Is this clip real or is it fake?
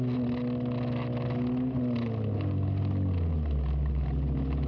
real